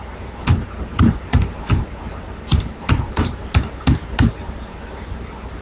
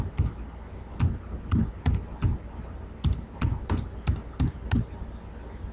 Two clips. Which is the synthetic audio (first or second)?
first